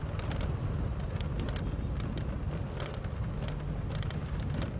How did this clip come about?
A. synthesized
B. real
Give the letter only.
B